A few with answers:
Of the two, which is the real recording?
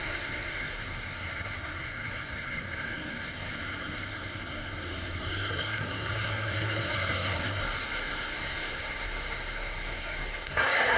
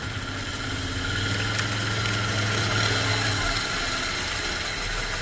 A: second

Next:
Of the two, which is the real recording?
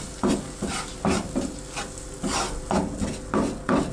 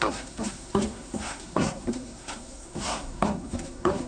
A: first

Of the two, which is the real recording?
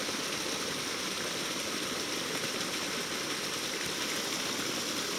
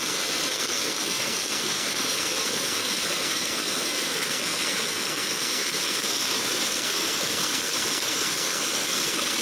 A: first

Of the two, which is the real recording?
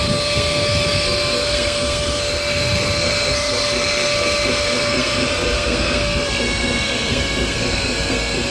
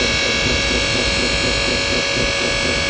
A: second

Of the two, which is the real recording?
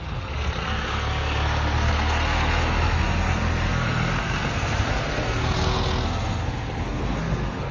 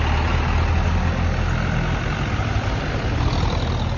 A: second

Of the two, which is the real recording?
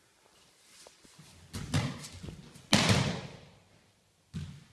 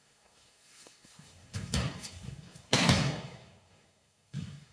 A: first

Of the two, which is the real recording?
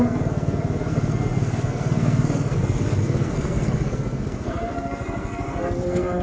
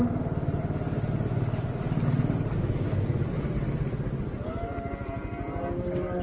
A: second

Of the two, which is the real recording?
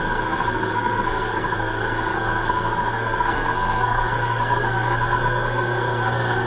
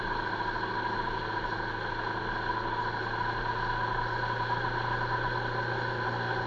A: second